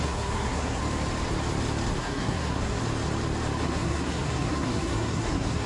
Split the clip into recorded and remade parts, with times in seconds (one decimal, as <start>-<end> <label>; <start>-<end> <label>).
0.0-0.8 remade; 0.8-2.0 recorded; 2.0-2.8 remade; 2.8-3.6 recorded; 3.6-5.7 remade